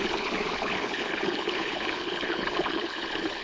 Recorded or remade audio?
remade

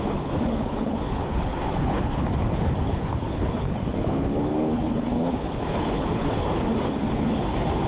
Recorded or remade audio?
remade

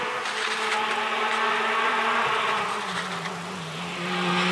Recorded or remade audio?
recorded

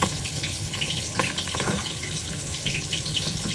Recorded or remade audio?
remade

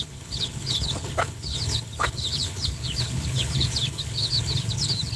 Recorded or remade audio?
remade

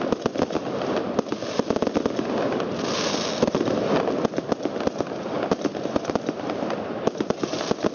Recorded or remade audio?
recorded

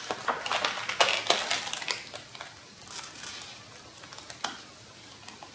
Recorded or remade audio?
recorded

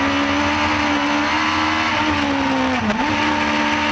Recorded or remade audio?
recorded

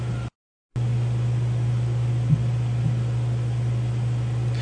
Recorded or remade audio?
recorded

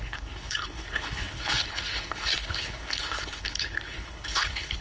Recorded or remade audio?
remade